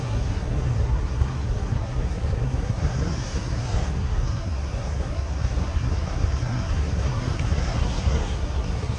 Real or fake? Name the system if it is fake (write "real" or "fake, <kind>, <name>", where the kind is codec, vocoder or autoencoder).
fake, codec, SNAC